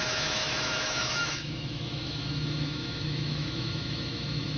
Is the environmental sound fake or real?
fake